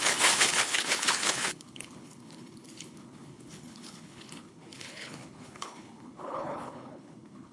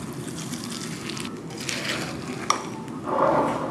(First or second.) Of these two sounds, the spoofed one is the first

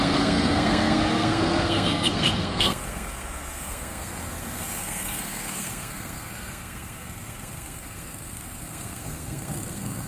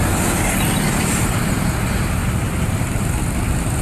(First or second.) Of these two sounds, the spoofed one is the first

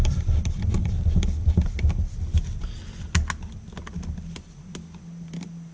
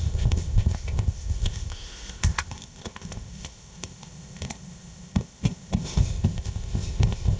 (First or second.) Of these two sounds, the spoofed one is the second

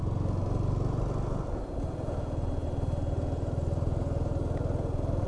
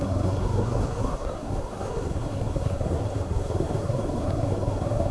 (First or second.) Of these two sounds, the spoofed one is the second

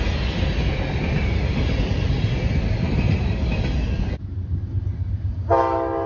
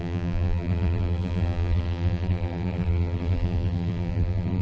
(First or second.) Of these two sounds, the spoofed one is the second